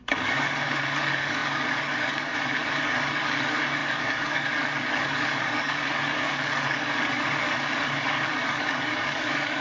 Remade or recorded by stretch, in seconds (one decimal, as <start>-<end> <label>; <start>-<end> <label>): 0.0-9.6 remade